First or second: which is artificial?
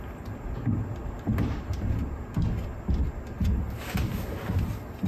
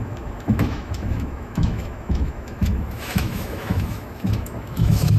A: second